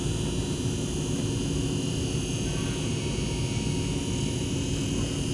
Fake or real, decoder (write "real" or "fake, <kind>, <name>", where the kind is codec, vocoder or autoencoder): real